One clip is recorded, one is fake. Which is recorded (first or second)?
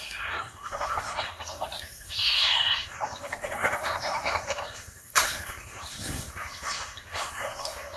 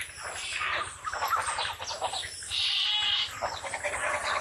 second